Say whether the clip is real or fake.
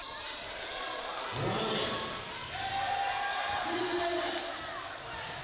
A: real